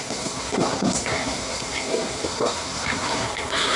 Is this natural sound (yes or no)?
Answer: no